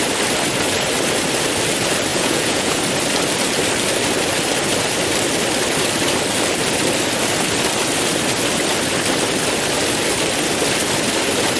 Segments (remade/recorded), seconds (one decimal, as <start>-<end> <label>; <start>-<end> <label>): 0.0-2.1 recorded; 2.1-2.8 remade; 2.8-11.6 recorded